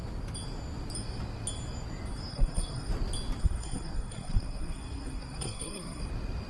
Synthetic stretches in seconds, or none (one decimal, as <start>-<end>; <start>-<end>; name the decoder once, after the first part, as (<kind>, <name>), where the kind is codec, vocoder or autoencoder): 2.3-2.9 (codec, SNAC); 3.4-6.0